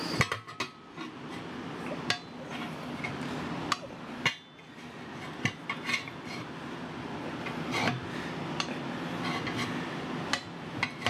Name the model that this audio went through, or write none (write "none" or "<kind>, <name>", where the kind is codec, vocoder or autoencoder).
none